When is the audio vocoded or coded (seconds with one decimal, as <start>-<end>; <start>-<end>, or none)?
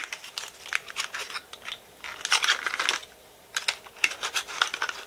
none